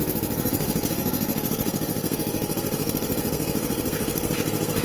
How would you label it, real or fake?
fake